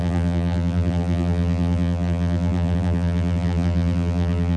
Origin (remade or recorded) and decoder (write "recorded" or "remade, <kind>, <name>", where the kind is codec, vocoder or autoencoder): remade, vocoder, BigVGAN v2